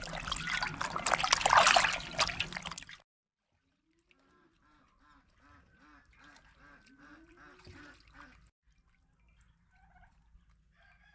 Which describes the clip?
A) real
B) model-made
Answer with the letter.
A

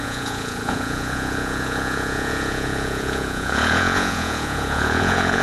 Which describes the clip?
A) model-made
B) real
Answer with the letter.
A